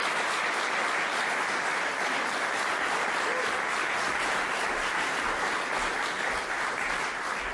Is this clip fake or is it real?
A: real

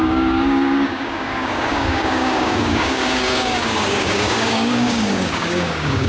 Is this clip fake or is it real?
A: fake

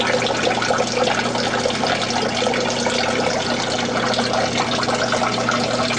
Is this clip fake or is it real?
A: real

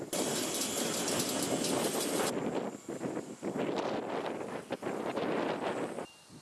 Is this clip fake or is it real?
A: real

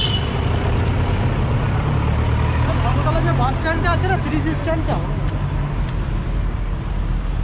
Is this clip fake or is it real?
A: real